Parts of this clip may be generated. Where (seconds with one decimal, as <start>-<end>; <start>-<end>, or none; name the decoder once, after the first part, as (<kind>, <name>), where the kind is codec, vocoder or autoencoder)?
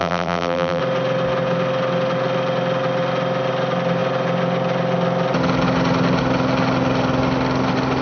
0.0-0.8 (vocoder, BigVGAN v2)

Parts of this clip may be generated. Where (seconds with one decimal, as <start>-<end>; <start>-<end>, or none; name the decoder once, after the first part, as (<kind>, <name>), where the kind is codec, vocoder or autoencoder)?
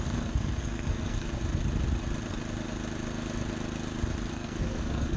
0.0-1.4 (codec, SNAC); 4.3-5.2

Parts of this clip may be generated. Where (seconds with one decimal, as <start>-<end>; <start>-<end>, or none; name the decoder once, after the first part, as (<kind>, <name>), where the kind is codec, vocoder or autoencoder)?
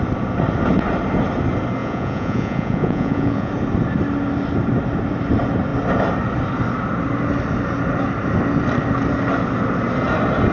1.8-3.5 (vocoder, Vocos)